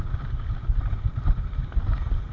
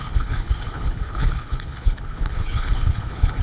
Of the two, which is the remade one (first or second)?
second